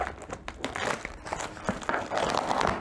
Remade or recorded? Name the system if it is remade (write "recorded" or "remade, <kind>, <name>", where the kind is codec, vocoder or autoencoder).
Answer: recorded